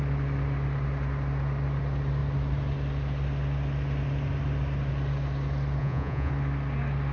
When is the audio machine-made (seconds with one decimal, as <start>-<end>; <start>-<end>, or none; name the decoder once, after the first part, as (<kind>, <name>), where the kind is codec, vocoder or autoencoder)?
5.8-6.3 (vocoder, Vocos)